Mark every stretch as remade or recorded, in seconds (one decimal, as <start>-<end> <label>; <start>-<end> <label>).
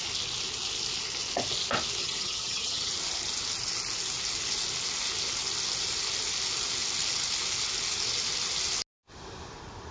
0.0-2.0 recorded; 2.0-2.9 remade; 2.9-9.9 recorded